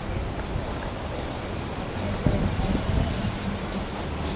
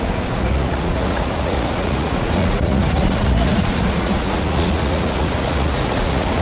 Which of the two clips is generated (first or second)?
second